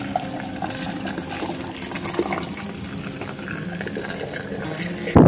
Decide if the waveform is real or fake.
real